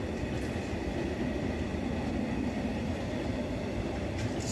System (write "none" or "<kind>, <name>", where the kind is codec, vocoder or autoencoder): none